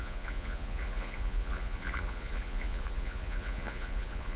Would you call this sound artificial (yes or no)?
yes